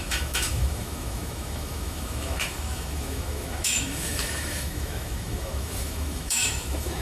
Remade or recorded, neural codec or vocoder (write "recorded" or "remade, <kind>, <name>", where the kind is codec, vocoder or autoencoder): remade, autoencoder, DAC-VAE